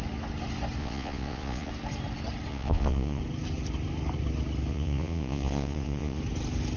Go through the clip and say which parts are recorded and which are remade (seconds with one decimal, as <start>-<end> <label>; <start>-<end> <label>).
0.0-0.8 recorded; 0.8-1.7 remade; 1.7-2.5 recorded; 2.5-3.2 remade; 3.2-4.7 recorded; 4.7-6.2 remade; 6.2-6.8 recorded